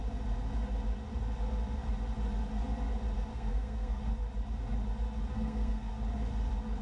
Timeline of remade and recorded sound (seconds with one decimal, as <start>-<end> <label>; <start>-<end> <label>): 0.0-3.3 recorded; 3.3-4.0 remade; 4.0-5.3 recorded; 5.3-5.9 remade; 5.9-6.8 recorded